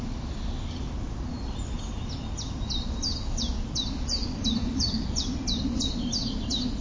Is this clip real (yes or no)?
yes